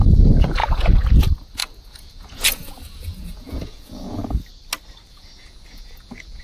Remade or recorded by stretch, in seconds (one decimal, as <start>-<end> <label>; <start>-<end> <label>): 0.0-4.2 remade; 4.2-5.1 recorded; 5.1-6.4 remade